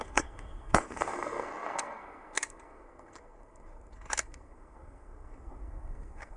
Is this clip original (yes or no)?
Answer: no